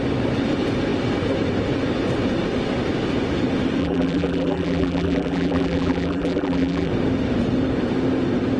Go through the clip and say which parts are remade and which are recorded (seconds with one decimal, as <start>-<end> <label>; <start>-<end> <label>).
0.0-3.8 recorded; 3.8-6.9 remade; 6.9-8.6 recorded